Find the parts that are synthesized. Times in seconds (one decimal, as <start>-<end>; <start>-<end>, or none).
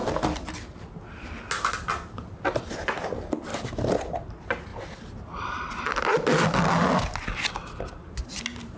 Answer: 3.5-4.3